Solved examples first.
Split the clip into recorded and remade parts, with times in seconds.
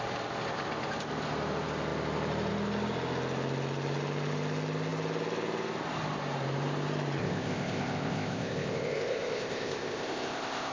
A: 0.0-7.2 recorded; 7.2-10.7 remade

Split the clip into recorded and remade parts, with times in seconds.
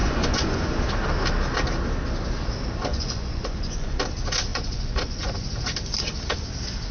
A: 0.0-0.9 remade; 0.9-2.9 recorded; 2.9-4.0 remade; 4.0-4.5 recorded; 4.5-5.5 remade; 5.5-6.9 recorded